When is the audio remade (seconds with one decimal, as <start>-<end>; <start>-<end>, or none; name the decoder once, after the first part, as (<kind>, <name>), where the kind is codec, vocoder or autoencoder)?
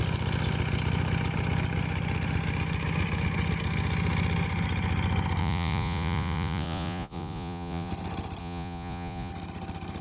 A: 5.4-7.9 (vocoder, Vocos); 8.4-9.3